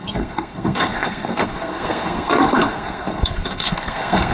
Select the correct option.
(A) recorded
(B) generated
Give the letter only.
B